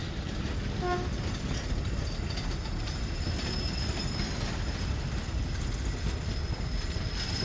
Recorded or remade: recorded